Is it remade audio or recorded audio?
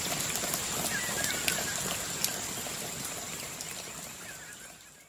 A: remade